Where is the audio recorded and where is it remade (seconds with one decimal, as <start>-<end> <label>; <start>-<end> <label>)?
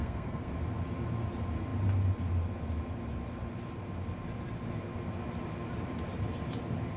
0.0-0.5 remade; 0.5-7.0 recorded